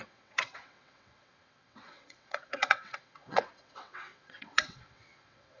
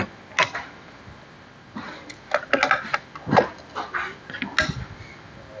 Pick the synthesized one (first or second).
first